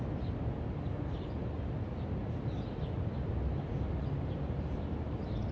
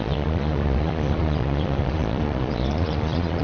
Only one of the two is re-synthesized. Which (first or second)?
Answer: second